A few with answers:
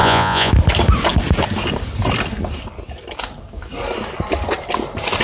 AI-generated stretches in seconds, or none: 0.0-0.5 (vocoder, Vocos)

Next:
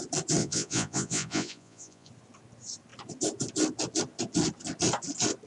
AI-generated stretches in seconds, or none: 0.4-2.1 (vocoder, Vocos)